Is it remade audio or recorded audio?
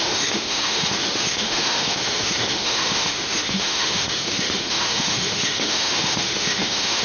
remade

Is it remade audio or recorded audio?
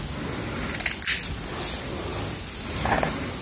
recorded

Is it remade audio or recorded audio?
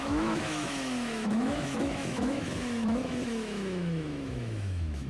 remade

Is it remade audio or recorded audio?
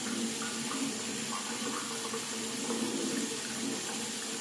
recorded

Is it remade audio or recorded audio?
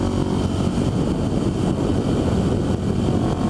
recorded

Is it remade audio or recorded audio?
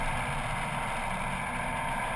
recorded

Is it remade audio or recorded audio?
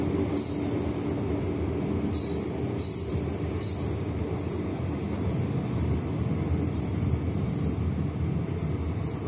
recorded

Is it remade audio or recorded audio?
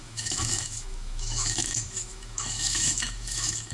remade